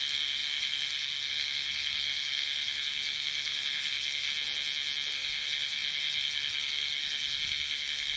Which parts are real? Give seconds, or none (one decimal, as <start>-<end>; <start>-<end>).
4.3-5.1